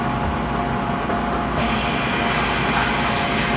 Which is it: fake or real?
real